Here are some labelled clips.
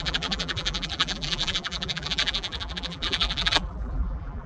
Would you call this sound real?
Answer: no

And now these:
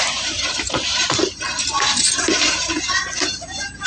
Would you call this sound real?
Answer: no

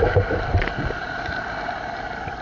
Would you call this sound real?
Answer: yes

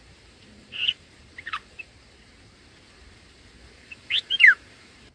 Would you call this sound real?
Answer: no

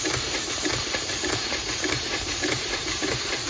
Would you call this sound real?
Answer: no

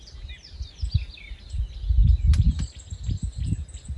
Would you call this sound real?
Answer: yes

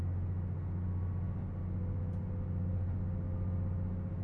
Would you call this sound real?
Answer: yes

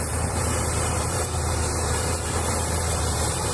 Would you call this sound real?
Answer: no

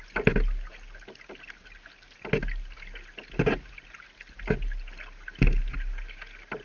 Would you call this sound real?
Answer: yes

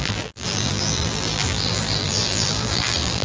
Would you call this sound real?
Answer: no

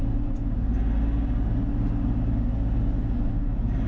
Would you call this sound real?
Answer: yes